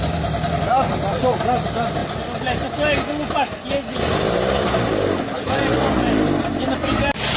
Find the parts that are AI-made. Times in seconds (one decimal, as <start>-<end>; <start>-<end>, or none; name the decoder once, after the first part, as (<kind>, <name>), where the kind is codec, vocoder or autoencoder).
none